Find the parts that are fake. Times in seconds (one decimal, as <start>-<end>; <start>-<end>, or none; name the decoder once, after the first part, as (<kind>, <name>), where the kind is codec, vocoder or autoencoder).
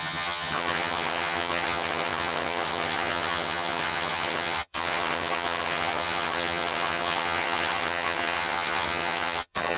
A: 0.0-9.8 (vocoder, HiFi-GAN)